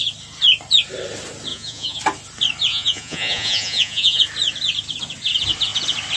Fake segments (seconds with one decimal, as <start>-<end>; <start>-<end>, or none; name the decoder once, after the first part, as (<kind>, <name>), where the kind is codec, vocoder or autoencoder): 1.5-2.0 (vocoder, Vocos); 2.7-4.2